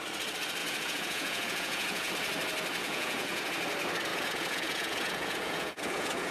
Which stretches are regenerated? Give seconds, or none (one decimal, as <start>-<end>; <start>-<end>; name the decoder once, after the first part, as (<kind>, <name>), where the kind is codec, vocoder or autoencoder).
0.6-2.1 (vocoder, Vocos); 2.8-3.5; 4.1-6.3